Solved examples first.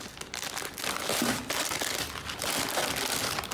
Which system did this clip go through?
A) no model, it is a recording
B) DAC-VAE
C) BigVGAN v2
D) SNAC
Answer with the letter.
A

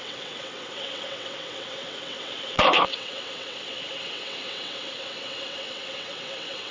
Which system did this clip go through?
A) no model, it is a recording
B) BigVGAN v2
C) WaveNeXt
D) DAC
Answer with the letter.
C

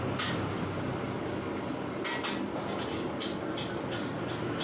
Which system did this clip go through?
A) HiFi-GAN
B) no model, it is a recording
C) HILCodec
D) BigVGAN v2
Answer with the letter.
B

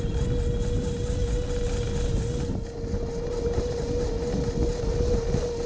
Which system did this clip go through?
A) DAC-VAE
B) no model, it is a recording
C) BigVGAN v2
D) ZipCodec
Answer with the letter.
B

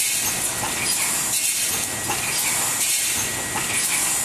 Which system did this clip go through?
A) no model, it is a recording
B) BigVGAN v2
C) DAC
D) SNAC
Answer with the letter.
A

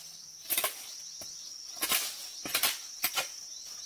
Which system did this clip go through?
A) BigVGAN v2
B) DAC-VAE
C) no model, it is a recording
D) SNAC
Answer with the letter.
C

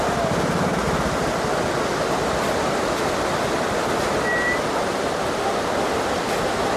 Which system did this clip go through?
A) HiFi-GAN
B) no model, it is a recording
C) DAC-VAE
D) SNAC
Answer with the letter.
B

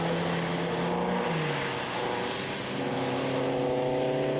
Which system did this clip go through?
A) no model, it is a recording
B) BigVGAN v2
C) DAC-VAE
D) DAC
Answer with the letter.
A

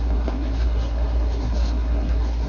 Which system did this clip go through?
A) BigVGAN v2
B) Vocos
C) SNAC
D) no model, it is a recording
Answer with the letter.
C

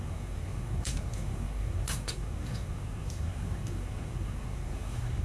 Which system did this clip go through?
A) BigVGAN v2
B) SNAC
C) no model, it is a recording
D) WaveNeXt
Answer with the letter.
B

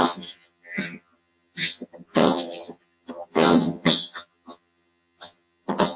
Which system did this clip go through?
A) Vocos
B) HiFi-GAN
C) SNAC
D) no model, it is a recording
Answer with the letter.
B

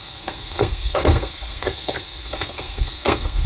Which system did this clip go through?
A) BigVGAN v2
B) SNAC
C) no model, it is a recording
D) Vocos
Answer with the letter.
B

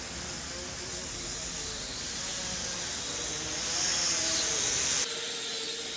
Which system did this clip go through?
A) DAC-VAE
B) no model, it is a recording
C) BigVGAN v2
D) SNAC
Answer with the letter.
B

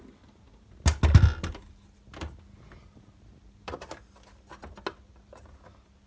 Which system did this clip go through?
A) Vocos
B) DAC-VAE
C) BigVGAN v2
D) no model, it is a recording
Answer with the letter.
D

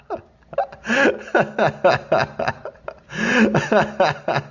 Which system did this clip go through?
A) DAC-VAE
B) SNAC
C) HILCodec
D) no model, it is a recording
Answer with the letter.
D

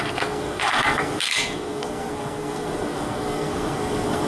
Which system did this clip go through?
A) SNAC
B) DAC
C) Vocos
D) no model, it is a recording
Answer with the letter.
A